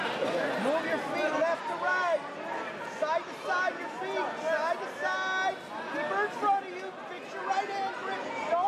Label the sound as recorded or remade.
recorded